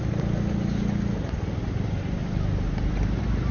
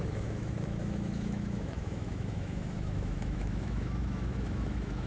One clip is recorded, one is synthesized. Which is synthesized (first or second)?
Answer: second